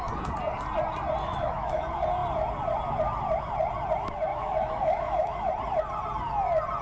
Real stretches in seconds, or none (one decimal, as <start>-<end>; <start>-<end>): 0.0-1.2; 1.8-4.3; 5.5-6.8